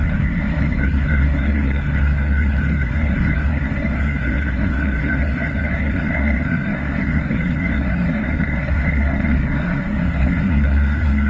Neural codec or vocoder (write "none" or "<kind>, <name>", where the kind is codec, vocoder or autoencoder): codec, SNAC